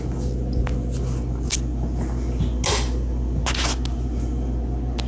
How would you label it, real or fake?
real